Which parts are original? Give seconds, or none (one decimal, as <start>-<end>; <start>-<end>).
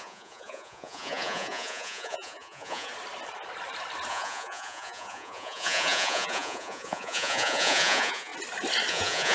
2.9-4.1; 8.3-8.9